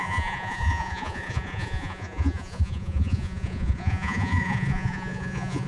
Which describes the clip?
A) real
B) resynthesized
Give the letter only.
B